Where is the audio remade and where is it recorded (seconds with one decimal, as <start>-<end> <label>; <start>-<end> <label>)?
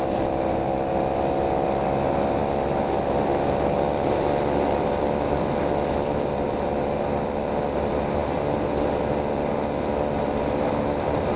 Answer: 0.0-11.4 recorded